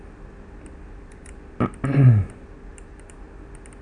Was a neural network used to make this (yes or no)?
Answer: no